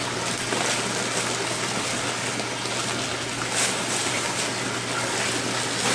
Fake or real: real